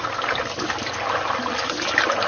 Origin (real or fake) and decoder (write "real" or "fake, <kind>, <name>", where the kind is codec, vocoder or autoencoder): real